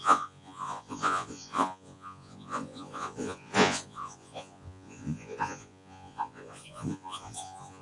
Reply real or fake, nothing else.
fake